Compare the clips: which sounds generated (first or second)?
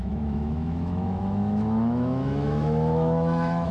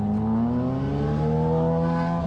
first